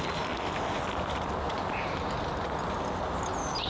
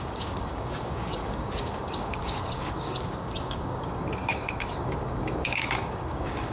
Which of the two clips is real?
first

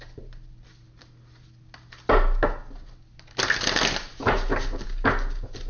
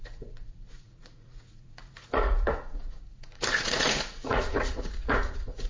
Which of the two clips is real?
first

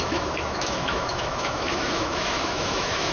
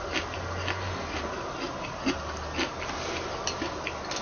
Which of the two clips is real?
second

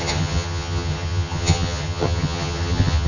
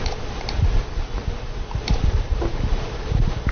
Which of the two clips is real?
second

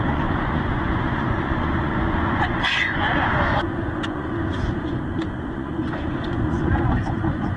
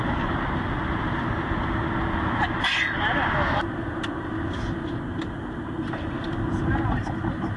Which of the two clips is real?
second